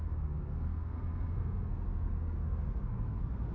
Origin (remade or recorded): remade